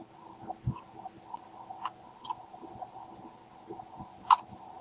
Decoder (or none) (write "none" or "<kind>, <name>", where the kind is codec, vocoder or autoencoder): none